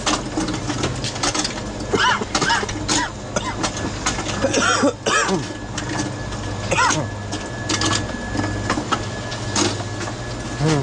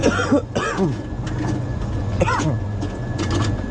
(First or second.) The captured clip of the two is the first